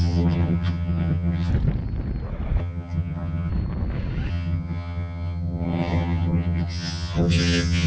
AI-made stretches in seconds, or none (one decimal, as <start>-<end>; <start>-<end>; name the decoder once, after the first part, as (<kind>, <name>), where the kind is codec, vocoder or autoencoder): 0.0-1.5 (vocoder, HiFi-GAN); 2.6-3.5; 4.3-7.9